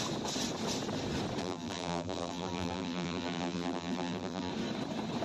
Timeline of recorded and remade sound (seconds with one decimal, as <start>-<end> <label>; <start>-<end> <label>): 0.0-1.4 recorded; 1.4-4.5 remade; 4.5-5.2 recorded